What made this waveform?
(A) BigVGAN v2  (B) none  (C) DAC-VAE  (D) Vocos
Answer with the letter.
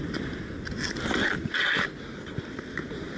B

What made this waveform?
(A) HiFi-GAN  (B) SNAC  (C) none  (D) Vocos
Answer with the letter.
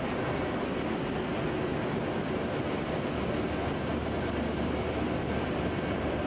C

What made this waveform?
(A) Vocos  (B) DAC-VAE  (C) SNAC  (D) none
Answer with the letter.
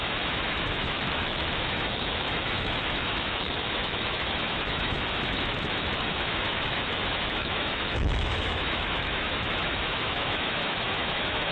B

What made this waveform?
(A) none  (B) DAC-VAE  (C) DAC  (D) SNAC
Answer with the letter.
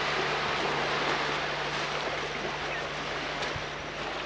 A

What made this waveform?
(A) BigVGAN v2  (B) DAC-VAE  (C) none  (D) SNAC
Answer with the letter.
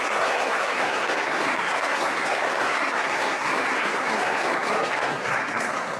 D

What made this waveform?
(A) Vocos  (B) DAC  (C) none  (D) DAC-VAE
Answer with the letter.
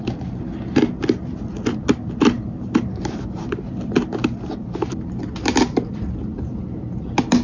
C